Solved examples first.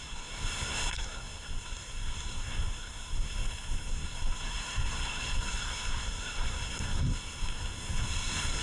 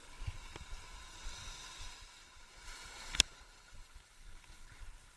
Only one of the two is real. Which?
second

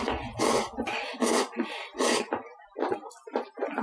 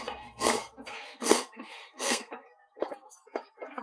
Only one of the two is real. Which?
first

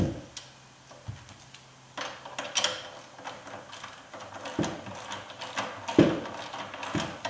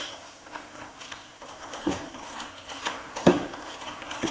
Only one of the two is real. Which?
first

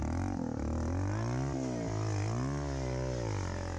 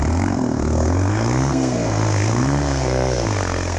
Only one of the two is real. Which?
first